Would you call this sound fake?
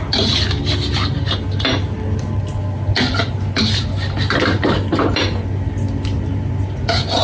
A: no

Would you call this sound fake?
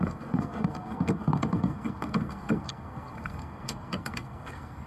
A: yes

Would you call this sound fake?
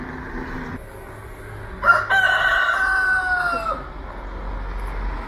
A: no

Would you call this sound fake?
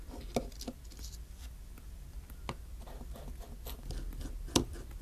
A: no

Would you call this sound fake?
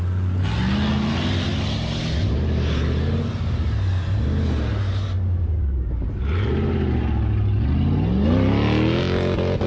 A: no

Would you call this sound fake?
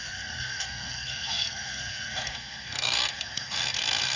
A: yes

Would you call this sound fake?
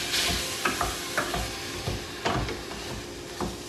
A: no